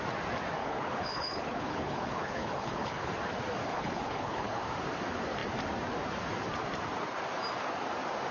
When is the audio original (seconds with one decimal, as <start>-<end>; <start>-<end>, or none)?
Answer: 0.0-0.6; 3.1-3.7; 4.6-8.3